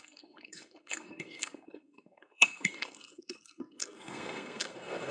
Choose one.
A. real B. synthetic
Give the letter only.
B